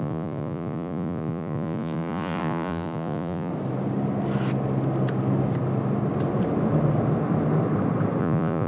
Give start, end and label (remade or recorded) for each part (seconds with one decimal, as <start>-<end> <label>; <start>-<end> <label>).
0.0-3.5 remade; 3.5-8.2 recorded; 8.2-8.7 remade